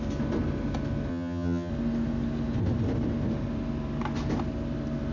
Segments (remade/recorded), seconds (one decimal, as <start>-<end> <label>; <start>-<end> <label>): 0.0-1.1 recorded; 1.1-1.7 remade; 1.7-5.1 recorded